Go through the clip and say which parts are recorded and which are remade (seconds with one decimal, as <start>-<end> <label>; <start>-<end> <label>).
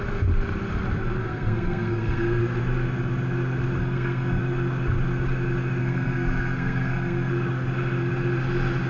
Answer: 0.0-1.2 recorded; 1.2-2.4 remade; 2.4-3.8 recorded; 3.8-4.4 remade; 4.4-5.8 recorded; 5.8-7.3 remade; 7.3-8.9 recorded